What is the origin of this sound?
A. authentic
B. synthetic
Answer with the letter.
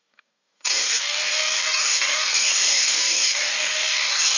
B